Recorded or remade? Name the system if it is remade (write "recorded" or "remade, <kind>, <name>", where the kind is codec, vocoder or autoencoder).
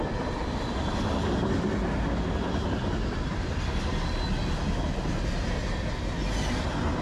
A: recorded